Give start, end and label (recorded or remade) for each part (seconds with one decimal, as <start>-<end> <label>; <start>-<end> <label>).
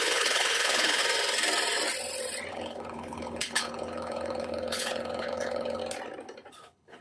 0.0-1.0 remade; 1.0-2.5 recorded; 2.5-5.8 remade; 5.8-6.5 recorded; 6.5-7.0 remade